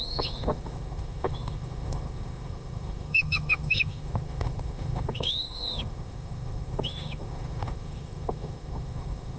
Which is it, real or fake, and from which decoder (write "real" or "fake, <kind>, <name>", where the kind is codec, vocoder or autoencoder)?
fake, autoencoder, DAC-VAE